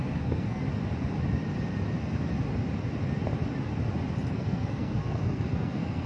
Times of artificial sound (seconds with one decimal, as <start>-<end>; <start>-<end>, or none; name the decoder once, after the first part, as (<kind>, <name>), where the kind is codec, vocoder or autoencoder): 0.0-0.6 (codec, SNAC); 4.3-6.1